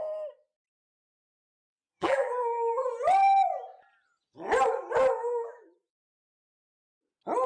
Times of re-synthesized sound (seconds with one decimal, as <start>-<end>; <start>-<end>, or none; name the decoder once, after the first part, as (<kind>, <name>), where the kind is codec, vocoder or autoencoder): 1.9-2.9 (vocoder, BigVGAN v2); 5.2-5.9